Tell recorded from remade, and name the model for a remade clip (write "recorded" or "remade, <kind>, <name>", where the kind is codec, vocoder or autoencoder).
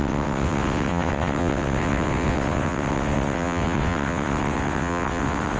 remade, vocoder, WaveNeXt